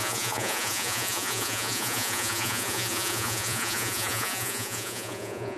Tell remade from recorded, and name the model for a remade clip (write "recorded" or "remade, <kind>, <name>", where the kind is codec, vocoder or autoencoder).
remade, vocoder, Vocos